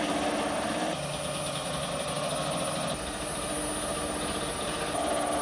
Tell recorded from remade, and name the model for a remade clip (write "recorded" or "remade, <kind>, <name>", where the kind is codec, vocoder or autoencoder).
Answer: recorded